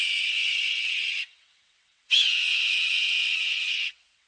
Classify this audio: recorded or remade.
remade